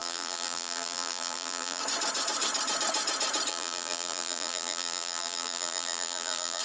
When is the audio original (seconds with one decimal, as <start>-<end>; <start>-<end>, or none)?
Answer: 1.8-3.5